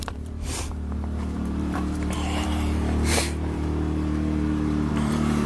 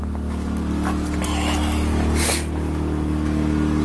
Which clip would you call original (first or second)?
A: second